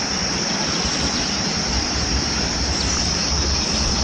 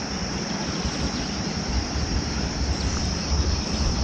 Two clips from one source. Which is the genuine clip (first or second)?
first